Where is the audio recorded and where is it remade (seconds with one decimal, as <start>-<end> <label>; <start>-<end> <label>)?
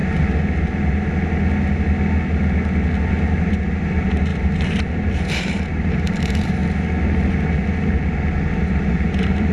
0.0-3.1 recorded; 3.1-6.6 remade; 6.6-8.7 recorded; 8.7-9.5 remade